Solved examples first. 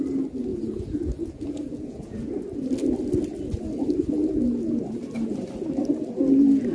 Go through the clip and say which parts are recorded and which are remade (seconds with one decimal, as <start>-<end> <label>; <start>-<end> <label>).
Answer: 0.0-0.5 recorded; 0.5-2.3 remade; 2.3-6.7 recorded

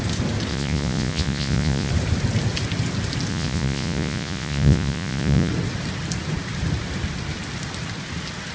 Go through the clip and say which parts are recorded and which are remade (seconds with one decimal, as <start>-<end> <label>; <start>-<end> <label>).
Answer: 0.0-0.5 recorded; 0.5-1.9 remade; 1.9-3.3 recorded; 3.3-5.5 remade; 5.5-8.5 recorded

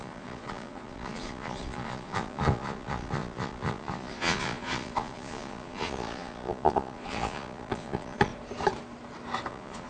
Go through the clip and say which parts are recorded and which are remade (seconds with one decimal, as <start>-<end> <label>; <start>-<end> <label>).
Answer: 0.0-8.3 remade; 8.3-9.5 recorded; 9.5-9.9 remade

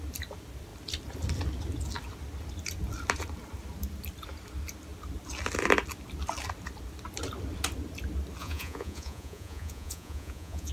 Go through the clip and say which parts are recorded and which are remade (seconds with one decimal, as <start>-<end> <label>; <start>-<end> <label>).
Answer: 0.0-8.4 recorded; 8.4-10.7 remade

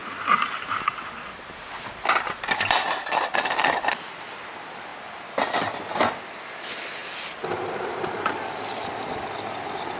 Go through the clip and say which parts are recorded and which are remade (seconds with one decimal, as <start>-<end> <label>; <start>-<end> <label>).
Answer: 0.0-10.0 recorded